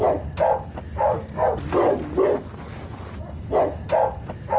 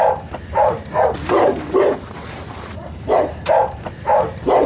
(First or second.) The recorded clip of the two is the first